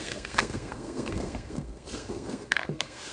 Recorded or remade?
remade